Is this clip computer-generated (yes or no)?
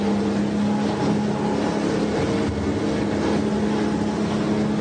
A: no